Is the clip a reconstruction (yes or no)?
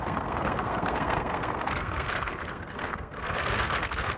yes